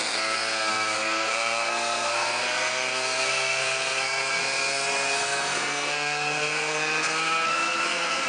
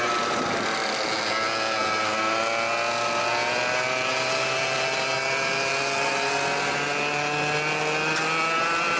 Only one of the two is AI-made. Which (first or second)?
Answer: first